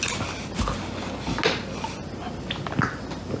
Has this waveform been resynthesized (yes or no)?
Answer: no